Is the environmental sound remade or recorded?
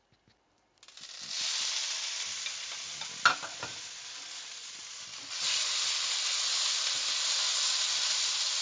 recorded